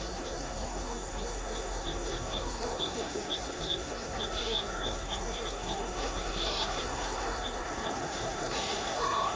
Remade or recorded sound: remade